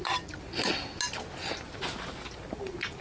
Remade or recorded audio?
recorded